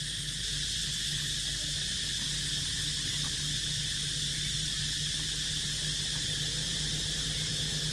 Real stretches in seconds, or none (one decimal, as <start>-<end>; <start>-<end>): 0.0-4.0; 4.7-7.9